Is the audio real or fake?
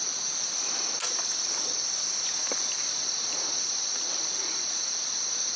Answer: real